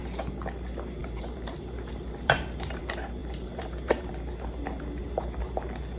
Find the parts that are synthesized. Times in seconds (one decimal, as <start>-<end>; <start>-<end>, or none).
1.0-2.8; 3.2-4.1